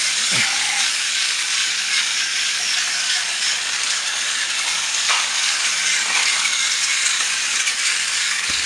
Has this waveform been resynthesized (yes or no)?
yes